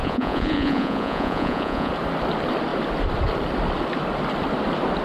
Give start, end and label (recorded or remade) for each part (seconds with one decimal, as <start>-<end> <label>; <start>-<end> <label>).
0.0-1.9 remade; 1.9-5.0 recorded

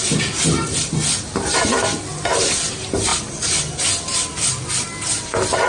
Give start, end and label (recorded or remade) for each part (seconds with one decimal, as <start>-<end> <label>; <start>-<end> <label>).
0.0-5.7 recorded

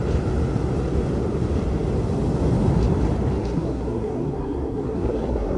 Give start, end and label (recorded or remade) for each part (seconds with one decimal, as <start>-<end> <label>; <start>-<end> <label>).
0.0-3.4 recorded; 3.4-5.6 remade

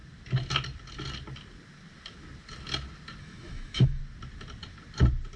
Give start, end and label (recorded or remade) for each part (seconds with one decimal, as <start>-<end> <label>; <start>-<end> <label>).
0.0-3.2 recorded; 3.2-4.0 remade; 4.0-5.4 recorded